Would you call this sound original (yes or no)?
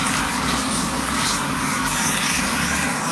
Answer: no